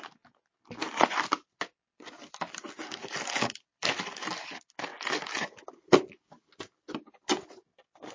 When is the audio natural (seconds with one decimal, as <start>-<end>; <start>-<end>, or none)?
0.0-8.1